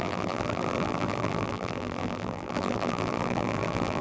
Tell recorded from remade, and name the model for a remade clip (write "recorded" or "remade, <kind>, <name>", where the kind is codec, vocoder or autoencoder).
remade, vocoder, BigVGAN v2